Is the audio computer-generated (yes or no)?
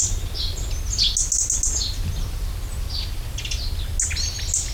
no